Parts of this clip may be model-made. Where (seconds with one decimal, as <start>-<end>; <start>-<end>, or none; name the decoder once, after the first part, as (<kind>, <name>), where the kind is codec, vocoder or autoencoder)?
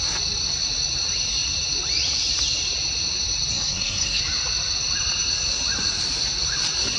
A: 3.5-4.2 (codec, SNAC)